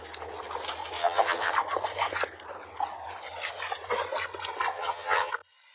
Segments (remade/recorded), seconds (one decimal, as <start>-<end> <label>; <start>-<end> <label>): 0.0-1.0 recorded; 1.0-1.5 remade; 1.5-4.7 recorded; 4.7-5.3 remade; 5.3-5.7 recorded